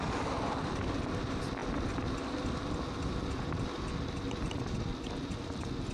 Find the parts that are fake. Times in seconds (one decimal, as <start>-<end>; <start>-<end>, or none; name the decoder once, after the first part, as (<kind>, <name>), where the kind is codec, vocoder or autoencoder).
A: none